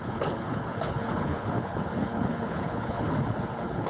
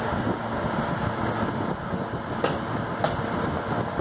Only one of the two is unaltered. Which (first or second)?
second